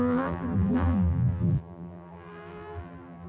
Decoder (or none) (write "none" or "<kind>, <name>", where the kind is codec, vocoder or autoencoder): vocoder, BigVGAN v2